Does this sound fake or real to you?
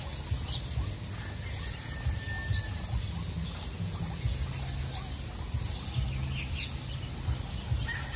real